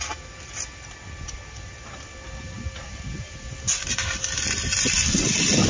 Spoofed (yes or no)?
no